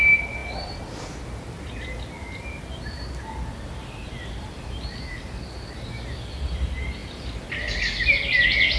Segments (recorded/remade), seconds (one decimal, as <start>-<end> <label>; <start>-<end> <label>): 0.0-8.8 recorded